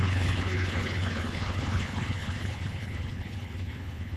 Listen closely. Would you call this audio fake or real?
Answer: fake